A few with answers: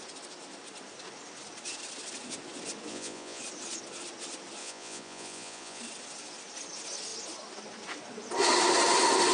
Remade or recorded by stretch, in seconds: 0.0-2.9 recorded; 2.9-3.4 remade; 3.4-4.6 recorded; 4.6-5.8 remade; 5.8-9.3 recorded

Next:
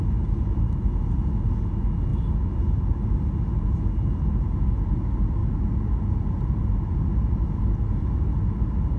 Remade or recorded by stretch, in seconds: 0.0-9.0 recorded

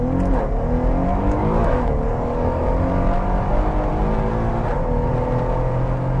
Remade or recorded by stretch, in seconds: 0.0-1.2 recorded; 1.2-2.7 remade; 2.7-6.2 recorded